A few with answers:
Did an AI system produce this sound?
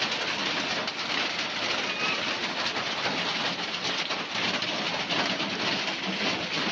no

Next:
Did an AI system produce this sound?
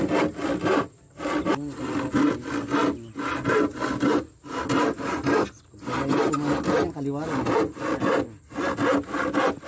no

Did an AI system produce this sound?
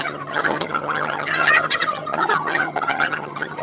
yes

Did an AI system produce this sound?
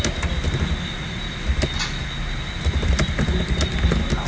no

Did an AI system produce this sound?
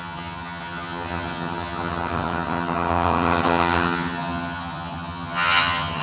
yes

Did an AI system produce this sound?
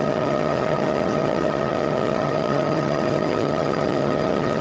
yes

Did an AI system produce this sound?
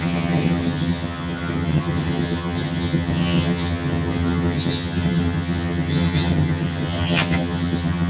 yes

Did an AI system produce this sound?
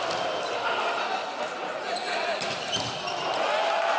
no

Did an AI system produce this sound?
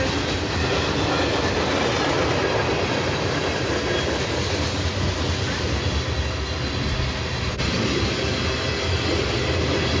no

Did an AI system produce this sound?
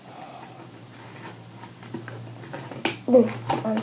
no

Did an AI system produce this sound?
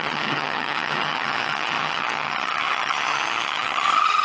yes